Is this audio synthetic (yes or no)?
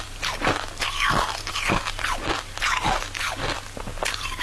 no